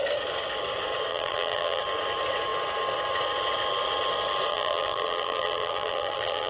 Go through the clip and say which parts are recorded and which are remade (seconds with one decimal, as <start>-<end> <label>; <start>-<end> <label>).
0.0-1.1 recorded; 1.1-1.8 remade; 1.8-4.5 recorded; 4.5-6.5 remade